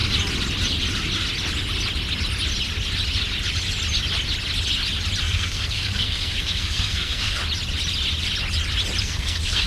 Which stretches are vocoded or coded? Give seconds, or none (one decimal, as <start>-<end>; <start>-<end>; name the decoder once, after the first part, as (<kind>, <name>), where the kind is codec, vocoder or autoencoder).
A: 5.2-7.4 (codec, SNAC); 9.0-9.7